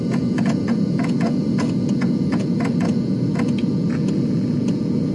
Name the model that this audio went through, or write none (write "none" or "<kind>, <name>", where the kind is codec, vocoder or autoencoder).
vocoder, Vocos